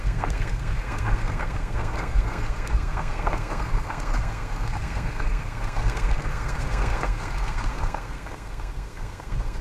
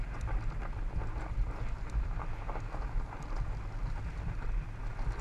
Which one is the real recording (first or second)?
second